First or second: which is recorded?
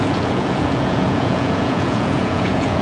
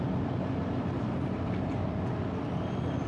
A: second